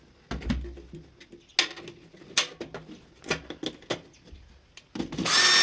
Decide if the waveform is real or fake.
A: real